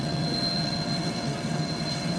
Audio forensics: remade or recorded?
remade